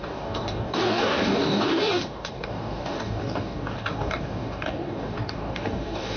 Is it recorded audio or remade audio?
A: remade